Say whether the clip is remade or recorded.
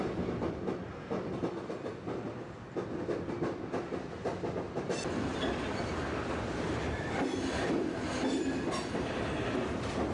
recorded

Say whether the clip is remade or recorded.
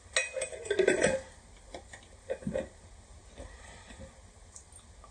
recorded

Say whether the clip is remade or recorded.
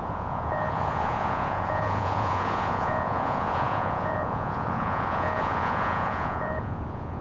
remade